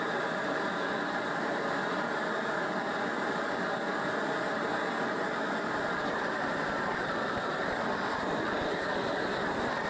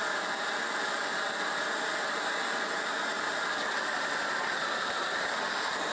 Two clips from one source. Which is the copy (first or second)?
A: first